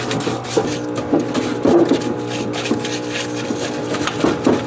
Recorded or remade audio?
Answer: recorded